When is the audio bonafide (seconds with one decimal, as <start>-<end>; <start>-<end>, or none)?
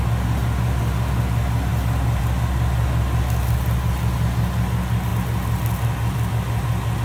0.0-7.0